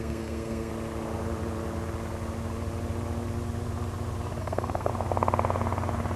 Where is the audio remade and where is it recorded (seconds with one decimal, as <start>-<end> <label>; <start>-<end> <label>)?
0.0-0.7 remade; 0.7-4.4 recorded; 4.4-4.9 remade; 4.9-6.2 recorded